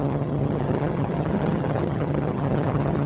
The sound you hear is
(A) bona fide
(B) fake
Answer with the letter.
B